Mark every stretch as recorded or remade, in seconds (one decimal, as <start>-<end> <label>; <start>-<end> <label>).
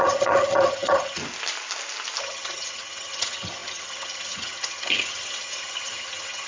0.0-1.2 remade; 1.2-2.2 recorded; 2.2-6.5 remade